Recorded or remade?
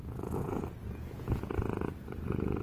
remade